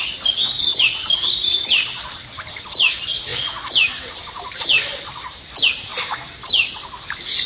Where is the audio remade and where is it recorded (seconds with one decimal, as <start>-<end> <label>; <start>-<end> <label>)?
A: 0.0-5.9 remade; 5.9-7.5 recorded